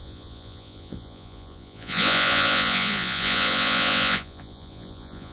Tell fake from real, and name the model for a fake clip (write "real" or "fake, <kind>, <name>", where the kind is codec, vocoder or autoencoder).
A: fake, vocoder, Vocos